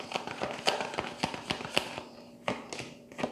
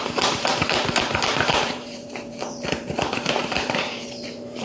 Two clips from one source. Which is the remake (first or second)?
second